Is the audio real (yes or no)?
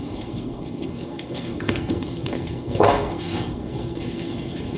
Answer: no